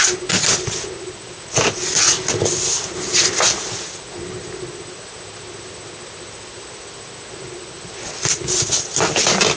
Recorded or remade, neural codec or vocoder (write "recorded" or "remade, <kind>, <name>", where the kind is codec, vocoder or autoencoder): recorded